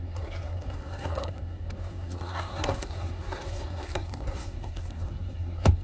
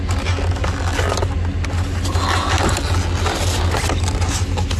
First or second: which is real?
second